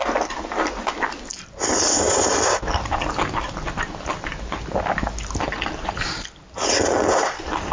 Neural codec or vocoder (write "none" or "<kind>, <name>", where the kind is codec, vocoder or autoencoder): none